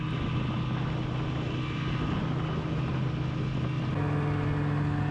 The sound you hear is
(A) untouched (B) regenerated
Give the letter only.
A